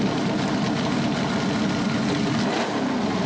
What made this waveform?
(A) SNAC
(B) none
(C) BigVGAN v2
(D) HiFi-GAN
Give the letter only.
B